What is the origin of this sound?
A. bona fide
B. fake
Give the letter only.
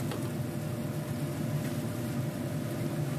A